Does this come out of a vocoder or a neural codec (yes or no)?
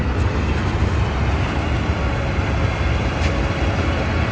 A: no